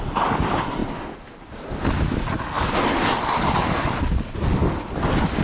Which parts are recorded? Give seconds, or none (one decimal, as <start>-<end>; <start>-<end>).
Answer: 0.0-5.4